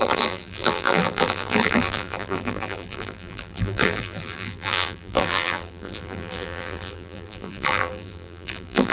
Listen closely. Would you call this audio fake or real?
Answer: fake